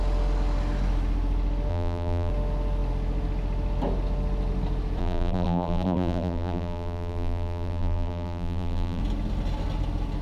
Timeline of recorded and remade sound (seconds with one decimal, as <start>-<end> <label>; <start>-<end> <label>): 0.0-1.7 recorded; 1.7-2.3 remade; 2.3-5.0 recorded; 5.0-9.0 remade; 9.0-10.2 recorded